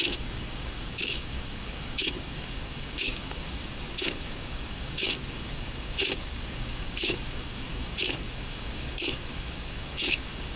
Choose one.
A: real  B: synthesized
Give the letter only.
B